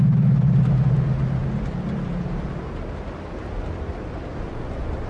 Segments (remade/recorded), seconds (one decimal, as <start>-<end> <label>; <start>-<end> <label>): 0.0-5.1 recorded